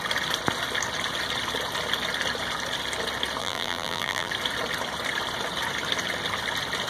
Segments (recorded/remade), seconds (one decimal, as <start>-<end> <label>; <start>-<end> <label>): 0.0-3.4 recorded; 3.4-4.3 remade; 4.3-6.9 recorded